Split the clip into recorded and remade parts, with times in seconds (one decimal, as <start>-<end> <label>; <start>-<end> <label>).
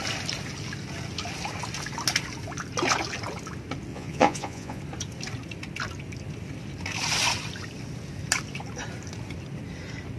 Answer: 0.0-3.9 recorded; 3.9-4.8 remade; 4.8-10.2 recorded